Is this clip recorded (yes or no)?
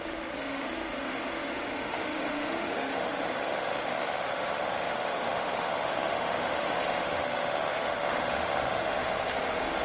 no